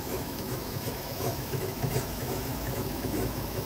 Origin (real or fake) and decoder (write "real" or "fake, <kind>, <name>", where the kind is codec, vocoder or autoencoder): fake, autoencoder, DAC-VAE